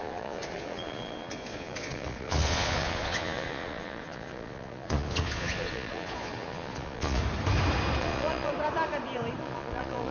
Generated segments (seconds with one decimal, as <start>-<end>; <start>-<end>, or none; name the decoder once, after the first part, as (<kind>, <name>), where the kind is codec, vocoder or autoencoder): 0.0-7.2 (vocoder, Vocos); 8.0-8.5; 9.4-10.1